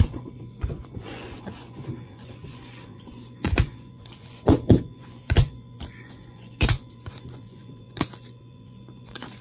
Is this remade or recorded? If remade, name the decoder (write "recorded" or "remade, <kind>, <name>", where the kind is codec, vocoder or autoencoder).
remade, vocoder, Vocos